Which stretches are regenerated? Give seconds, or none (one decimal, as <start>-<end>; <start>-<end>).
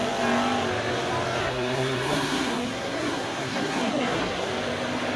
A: 1.4-4.5